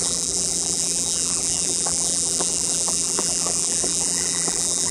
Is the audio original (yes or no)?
no